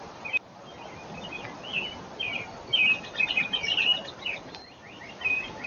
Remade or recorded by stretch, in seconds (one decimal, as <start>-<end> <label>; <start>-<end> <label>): 0.0-0.6 remade; 0.6-3.3 recorded; 3.3-3.9 remade; 3.9-5.0 recorded; 5.0-5.7 remade